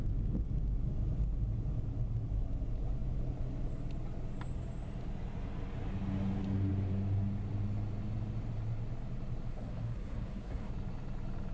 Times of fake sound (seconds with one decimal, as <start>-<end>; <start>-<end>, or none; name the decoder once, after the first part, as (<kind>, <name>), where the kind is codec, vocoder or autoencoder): 9.5-10.7 (codec, SNAC)